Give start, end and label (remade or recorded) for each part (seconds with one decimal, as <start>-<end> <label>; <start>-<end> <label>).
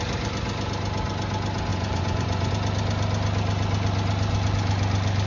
0.0-1.7 recorded; 1.7-2.5 remade; 2.5-5.3 recorded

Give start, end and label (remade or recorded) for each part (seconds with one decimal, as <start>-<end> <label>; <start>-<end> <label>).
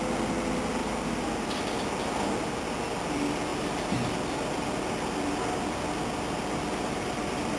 0.0-7.6 recorded